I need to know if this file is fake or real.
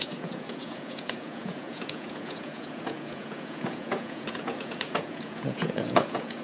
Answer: fake